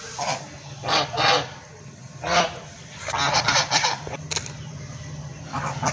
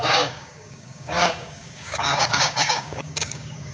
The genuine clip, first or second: first